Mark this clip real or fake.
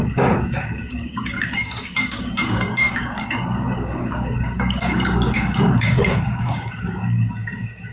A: fake